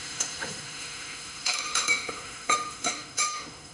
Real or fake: fake